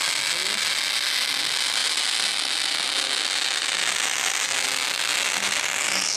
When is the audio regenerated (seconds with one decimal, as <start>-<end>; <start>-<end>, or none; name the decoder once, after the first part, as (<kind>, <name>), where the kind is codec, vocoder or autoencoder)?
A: none